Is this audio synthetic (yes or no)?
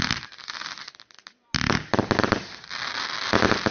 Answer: no